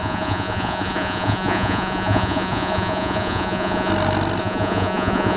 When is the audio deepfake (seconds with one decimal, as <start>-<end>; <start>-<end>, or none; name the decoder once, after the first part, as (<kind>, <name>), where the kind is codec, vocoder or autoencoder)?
0.0-3.9 (vocoder, Vocos); 4.4-5.4